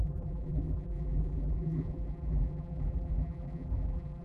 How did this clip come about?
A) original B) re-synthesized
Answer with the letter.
B